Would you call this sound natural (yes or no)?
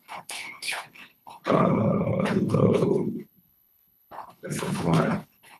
no